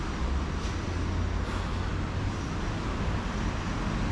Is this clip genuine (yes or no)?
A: yes